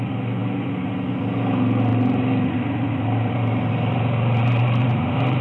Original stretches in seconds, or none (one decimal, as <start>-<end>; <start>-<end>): 0.0-1.9